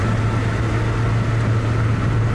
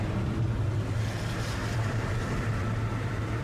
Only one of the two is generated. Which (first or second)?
second